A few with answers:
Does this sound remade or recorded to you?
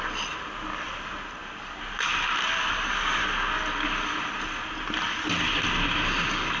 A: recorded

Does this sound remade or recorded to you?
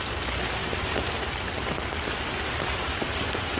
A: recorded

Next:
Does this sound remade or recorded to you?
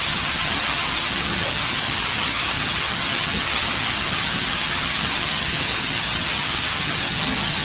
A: remade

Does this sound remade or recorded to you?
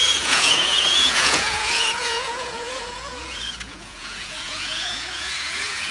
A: remade